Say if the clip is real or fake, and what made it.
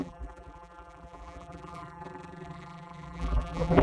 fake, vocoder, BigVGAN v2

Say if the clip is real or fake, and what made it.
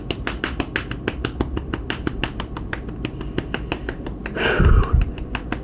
real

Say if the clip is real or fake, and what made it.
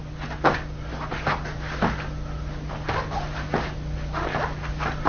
real